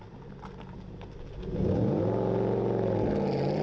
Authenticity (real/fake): real